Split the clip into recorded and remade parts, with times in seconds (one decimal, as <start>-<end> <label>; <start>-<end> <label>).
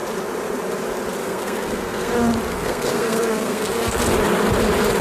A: 0.0-1.2 recorded; 1.2-2.1 remade; 2.1-2.5 recorded; 2.5-4.0 remade; 4.0-5.0 recorded